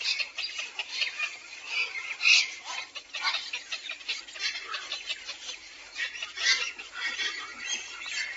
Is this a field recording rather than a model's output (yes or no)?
no